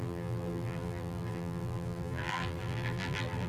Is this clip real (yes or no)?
no